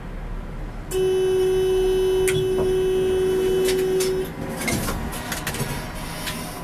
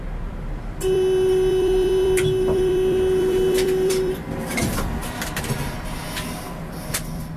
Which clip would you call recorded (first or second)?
first